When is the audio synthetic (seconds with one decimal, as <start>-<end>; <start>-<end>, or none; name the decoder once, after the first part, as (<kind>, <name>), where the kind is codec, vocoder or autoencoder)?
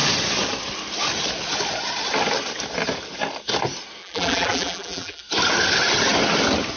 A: 4.0-5.2 (vocoder, BigVGAN v2)